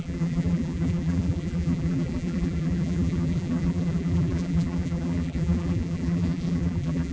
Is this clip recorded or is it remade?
remade